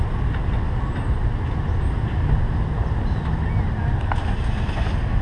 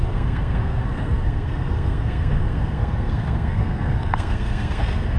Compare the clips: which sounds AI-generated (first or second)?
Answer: second